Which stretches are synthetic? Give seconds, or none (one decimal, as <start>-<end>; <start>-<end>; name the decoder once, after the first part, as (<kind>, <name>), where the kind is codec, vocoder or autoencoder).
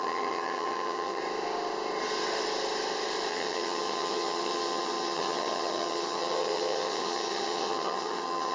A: 0.0-1.2 (vocoder, HiFi-GAN); 3.3-8.5